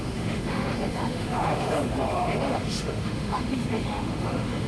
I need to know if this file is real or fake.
fake